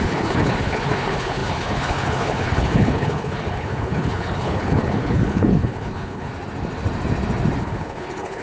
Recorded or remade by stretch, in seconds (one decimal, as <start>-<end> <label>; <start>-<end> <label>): 0.0-6.3 remade; 6.3-7.6 recorded; 7.6-8.4 remade